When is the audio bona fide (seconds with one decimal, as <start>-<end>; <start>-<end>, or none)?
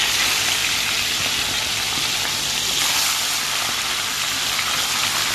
0.0-0.6; 3.8-5.3